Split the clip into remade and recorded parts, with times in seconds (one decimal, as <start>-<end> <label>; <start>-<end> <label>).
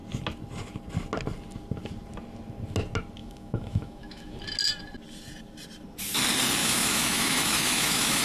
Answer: 0.0-3.2 recorded; 3.2-4.4 remade; 4.4-6.6 recorded; 6.6-8.2 remade